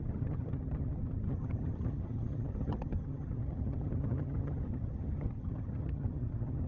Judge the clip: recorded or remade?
remade